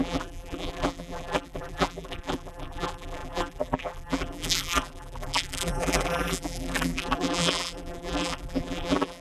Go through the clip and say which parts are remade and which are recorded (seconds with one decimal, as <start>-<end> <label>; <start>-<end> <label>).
0.0-9.2 remade